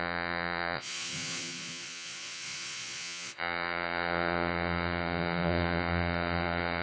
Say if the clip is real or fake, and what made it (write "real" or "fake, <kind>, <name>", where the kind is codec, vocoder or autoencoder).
fake, vocoder, Vocos